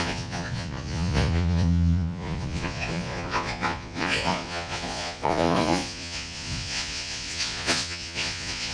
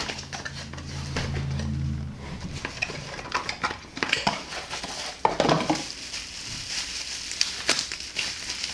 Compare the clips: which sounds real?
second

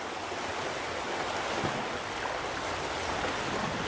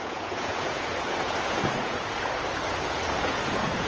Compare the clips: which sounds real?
first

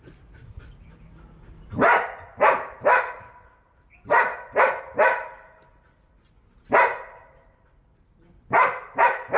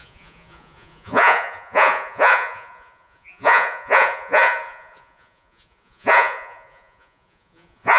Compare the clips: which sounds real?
first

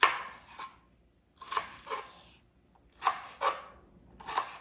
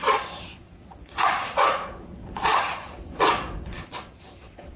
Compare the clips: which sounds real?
first